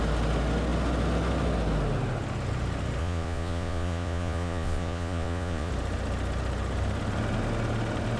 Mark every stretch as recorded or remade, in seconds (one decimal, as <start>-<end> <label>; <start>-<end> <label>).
0.0-3.0 recorded; 3.0-5.7 remade; 5.7-8.2 recorded